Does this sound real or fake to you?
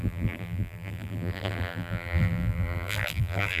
fake